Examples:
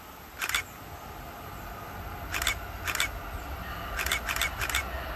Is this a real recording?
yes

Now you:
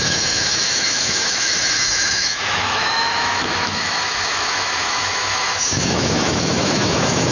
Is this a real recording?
no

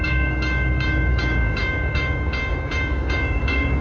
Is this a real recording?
no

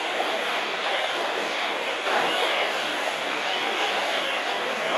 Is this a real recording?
no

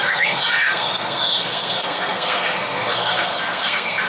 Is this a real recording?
no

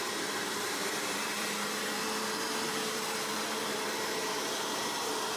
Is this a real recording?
no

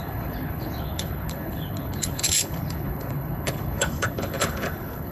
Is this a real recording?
no